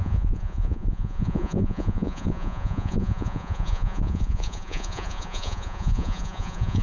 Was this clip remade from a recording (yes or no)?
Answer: yes